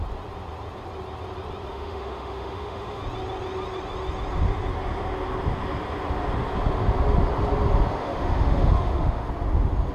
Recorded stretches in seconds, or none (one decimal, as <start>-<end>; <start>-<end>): 0.0-1.7; 3.0-8.0; 9.3-9.9